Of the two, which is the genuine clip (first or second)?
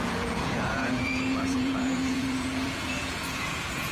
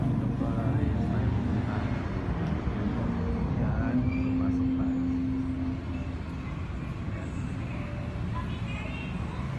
second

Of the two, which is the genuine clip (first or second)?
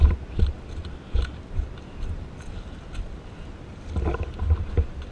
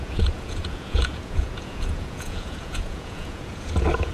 first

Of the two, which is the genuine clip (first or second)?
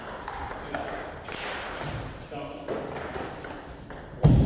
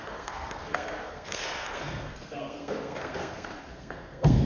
first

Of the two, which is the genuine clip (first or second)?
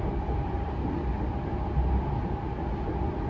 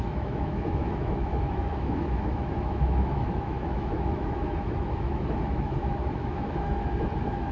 first